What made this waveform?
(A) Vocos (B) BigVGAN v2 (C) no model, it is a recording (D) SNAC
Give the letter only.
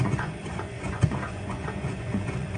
A